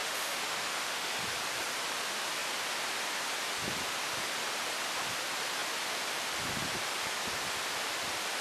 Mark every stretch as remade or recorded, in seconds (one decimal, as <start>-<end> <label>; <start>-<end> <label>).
0.0-1.1 remade; 1.1-8.4 recorded